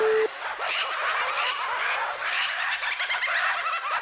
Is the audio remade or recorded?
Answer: recorded